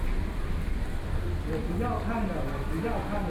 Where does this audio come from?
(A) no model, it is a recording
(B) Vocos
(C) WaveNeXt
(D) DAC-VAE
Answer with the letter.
A